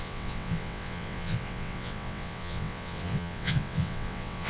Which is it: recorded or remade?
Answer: remade